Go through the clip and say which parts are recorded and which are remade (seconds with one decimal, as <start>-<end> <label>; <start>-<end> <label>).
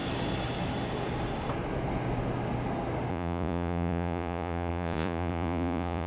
0.0-3.1 recorded; 3.1-6.1 remade